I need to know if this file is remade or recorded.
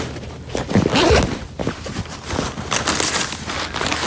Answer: recorded